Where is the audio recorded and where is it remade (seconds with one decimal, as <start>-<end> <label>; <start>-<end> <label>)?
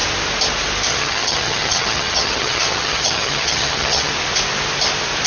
0.0-0.9 recorded; 0.9-4.1 remade; 4.1-5.3 recorded